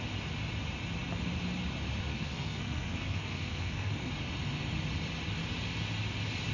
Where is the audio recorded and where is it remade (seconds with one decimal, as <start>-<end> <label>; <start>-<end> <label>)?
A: 0.0-2.0 recorded; 2.0-4.1 remade; 4.1-6.5 recorded